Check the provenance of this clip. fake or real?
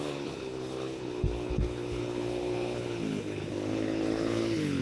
fake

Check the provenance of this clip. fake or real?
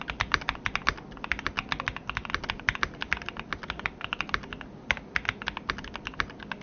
real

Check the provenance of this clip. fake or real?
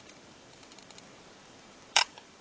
fake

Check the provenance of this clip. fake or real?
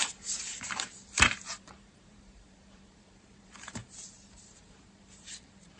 fake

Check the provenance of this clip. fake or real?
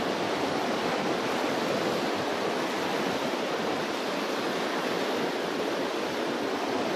real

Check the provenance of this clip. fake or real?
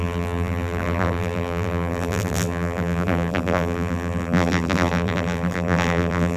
fake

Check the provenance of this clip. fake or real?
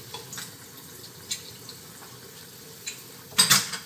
fake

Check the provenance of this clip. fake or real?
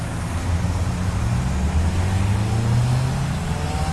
real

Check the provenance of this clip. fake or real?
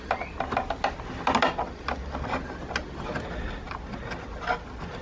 real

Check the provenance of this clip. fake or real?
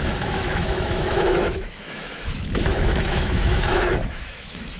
fake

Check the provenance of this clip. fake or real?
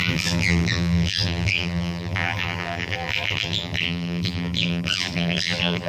fake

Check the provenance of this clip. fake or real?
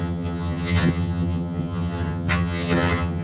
fake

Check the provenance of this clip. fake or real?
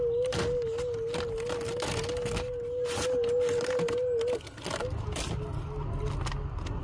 real